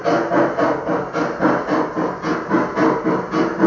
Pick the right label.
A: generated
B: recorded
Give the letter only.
B